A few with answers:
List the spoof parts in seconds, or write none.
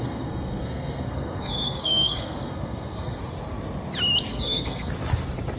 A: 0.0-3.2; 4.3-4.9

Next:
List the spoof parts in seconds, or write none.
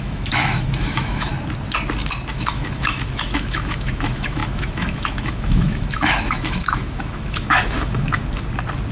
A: 0.0-1.3; 2.3-8.2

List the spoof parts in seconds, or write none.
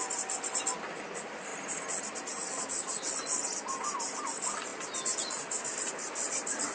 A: none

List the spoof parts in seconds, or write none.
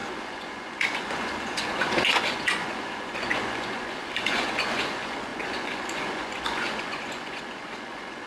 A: 0.0-8.3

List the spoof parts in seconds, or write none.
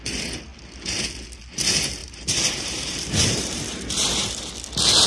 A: 2.0-4.5